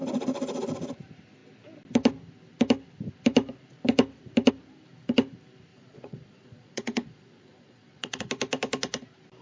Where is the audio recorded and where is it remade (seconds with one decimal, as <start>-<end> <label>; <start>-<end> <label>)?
0.0-5.7 recorded; 5.7-8.2 remade; 8.2-9.4 recorded